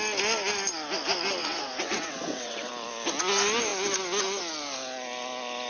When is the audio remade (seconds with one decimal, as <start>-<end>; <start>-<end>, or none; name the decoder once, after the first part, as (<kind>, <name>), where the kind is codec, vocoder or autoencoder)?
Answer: 1.4-2.7 (vocoder, WaveNeXt)